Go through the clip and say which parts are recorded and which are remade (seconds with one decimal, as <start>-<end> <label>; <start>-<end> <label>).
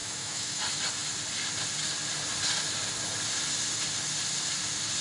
0.0-0.6 remade; 0.6-5.0 recorded